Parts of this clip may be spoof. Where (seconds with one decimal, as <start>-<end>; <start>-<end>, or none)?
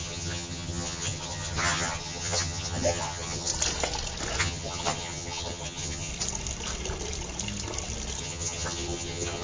0.0-3.5; 4.4-6.1; 8.2-9.4